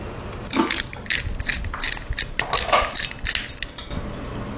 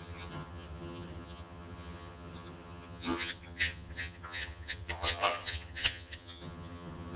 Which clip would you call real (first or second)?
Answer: first